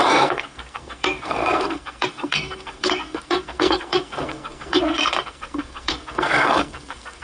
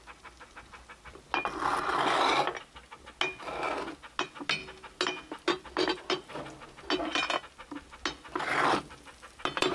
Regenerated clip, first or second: first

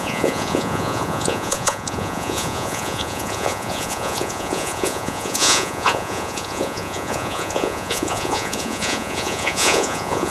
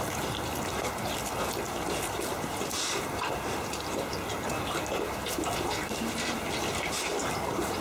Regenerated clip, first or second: first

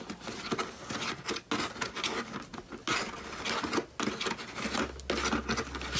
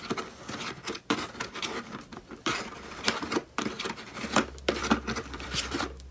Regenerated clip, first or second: second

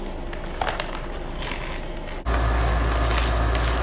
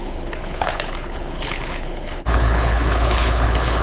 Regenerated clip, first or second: second